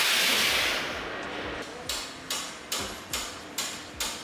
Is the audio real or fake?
real